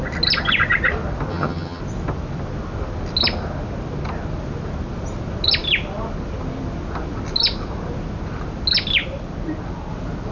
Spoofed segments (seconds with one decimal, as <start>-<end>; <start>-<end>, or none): 1.3-1.8